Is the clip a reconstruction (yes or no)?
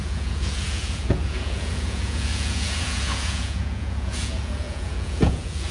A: yes